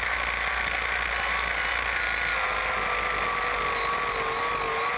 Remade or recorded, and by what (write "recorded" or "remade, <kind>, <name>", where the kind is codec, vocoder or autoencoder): recorded